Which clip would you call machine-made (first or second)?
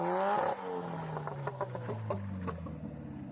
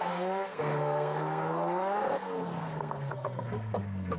second